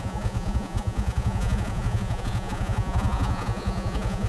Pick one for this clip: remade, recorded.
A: remade